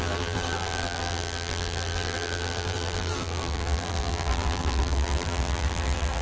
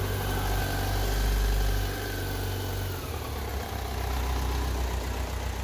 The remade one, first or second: first